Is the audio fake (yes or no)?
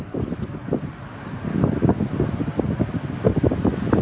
no